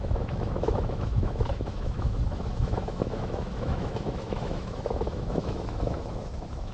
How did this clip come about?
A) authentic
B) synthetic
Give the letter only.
B